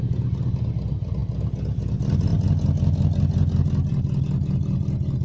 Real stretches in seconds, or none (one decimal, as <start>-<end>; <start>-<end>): 0.0-5.2